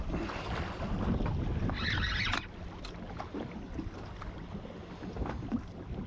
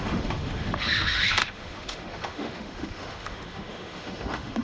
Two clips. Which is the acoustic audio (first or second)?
first